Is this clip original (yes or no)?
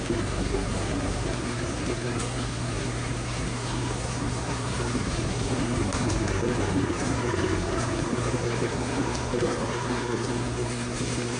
no